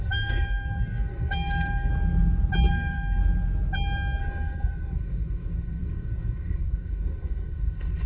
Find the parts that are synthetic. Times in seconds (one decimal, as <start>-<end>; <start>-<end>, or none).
0.0-1.9; 2.7-3.2; 4.2-8.1